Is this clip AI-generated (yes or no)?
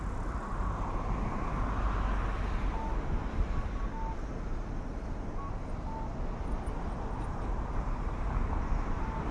no